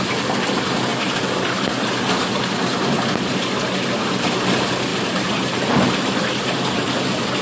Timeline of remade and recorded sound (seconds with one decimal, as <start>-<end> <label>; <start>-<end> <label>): 0.0-4.9 recorded; 4.9-6.9 remade; 6.9-7.4 recorded